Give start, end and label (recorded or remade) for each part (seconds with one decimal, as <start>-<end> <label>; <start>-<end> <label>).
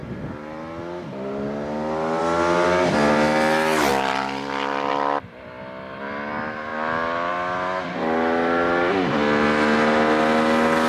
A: 0.0-3.9 recorded; 3.9-4.9 remade; 4.9-10.9 recorded